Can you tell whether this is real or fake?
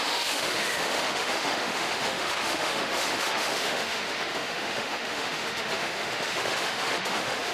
fake